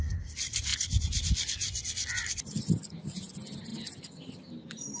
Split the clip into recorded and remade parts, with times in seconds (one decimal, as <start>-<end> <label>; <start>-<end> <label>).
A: 0.0-5.0 recorded